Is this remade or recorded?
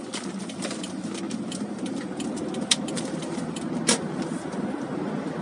recorded